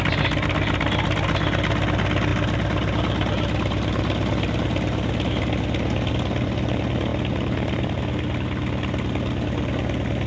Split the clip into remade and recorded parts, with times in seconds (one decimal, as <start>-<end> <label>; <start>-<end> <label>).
0.0-10.3 recorded